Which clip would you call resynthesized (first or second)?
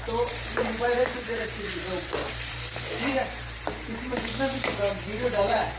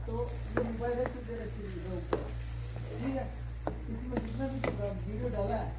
first